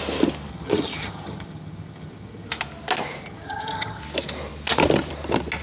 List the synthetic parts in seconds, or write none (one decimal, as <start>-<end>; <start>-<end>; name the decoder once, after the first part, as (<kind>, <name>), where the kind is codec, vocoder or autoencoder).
0.5-2.5 (vocoder, HiFi-GAN); 3.2-4.0